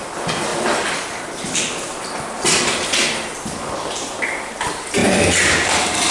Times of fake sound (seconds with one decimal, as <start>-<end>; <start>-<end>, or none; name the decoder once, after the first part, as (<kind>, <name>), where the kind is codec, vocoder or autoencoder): 5.0-6.1 (vocoder, BigVGAN v2)